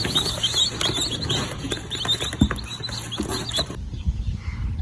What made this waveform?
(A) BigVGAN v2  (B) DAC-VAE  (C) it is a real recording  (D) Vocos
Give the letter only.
C